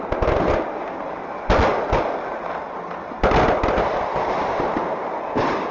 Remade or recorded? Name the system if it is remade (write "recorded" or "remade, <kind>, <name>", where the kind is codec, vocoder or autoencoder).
recorded